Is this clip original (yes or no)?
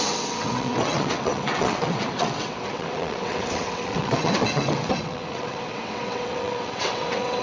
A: no